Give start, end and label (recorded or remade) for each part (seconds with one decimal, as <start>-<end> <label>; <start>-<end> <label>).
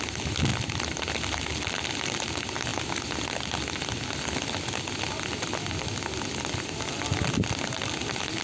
0.0-8.4 recorded